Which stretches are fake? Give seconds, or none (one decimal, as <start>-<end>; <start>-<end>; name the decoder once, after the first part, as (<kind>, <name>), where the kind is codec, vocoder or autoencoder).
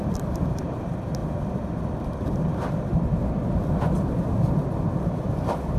0.0-1.2 (vocoder, BigVGAN v2); 3.6-5.8